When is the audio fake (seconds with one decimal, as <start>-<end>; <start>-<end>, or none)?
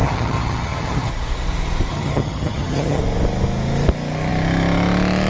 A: 0.0-1.1; 1.9-3.0